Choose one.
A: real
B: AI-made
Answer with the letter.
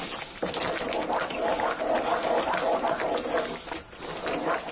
A